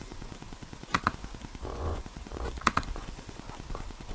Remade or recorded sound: remade